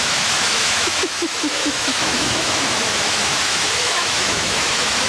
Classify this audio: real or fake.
fake